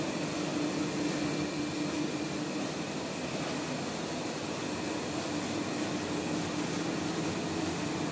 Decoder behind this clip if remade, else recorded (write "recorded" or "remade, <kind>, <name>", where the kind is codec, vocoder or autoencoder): recorded